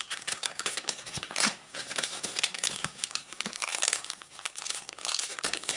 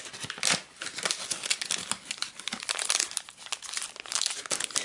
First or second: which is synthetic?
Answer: first